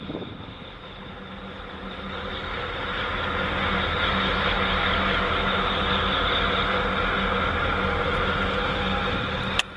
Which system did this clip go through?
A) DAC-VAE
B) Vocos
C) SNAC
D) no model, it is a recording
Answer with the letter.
D